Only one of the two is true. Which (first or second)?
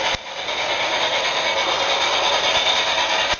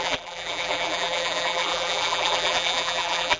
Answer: first